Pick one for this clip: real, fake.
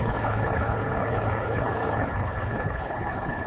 fake